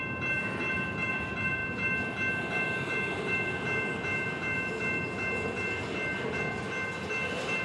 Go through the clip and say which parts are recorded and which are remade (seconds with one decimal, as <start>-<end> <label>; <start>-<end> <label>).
0.0-7.6 recorded